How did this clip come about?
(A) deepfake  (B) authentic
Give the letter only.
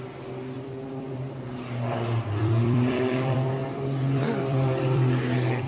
A